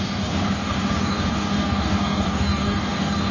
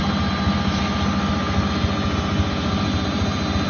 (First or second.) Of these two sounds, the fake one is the first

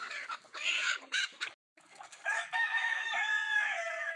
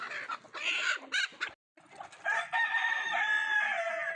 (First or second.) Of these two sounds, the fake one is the first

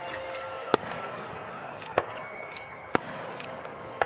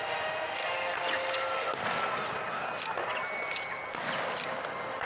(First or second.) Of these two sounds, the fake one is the first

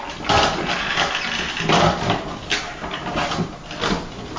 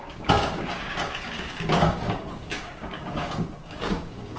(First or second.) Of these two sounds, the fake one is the second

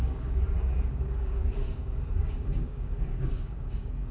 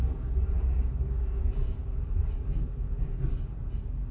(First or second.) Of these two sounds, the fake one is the first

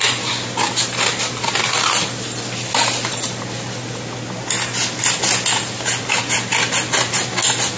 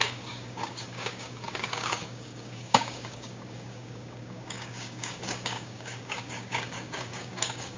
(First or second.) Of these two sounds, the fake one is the second